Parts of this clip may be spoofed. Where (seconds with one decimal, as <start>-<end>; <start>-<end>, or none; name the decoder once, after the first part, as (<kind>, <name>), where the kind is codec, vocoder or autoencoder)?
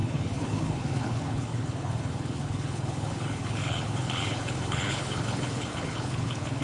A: 0.0-6.6 (codec, HILCodec)